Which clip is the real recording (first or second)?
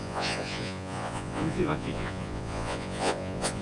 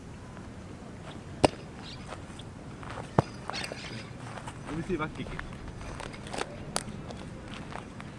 second